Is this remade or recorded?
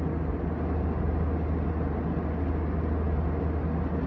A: recorded